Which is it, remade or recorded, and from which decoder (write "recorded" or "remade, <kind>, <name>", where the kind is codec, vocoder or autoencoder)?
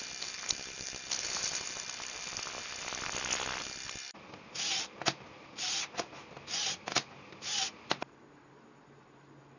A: recorded